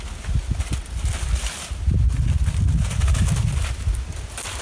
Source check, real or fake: real